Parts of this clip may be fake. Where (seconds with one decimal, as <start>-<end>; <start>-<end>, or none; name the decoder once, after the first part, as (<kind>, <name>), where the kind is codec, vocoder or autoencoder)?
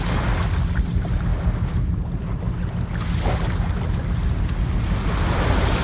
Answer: none